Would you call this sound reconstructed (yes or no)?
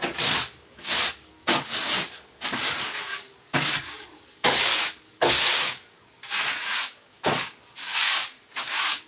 yes